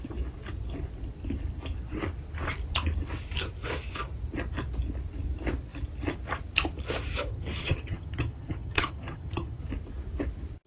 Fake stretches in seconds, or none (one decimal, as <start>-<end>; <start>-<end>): 7.3-9.6